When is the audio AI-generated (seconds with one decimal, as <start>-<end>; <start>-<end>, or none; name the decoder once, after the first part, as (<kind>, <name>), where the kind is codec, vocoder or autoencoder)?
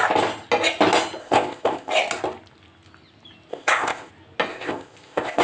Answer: 1.2-1.9 (codec, ZipCodec); 3.5-4.1; 4.5-5.4